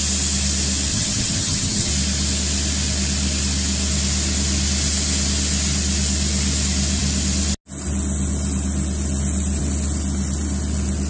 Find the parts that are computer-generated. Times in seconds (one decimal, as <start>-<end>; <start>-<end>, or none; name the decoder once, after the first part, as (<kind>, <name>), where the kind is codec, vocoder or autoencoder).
0.9-1.9 (vocoder, HiFi-GAN)